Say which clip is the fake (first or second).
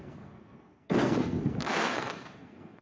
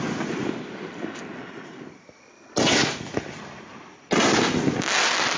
first